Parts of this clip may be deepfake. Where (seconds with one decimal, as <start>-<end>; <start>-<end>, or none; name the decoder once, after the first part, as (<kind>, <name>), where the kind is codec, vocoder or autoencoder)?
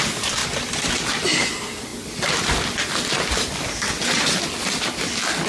none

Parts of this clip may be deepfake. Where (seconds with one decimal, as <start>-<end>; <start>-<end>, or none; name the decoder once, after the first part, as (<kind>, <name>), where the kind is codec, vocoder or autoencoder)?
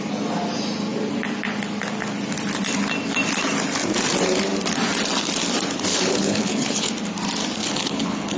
5.9-6.9 (codec, HILCodec); 7.6-8.4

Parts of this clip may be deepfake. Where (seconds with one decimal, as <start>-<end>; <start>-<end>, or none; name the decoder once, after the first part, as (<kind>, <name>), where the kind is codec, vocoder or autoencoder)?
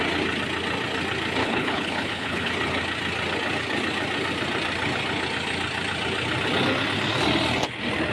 1.4-2.5 (codec, HILCodec)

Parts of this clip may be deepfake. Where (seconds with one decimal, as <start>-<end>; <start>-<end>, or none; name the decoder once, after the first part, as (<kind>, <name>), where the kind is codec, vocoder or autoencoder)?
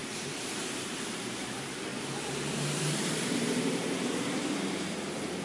0.0-5.4 (vocoder, BigVGAN v2)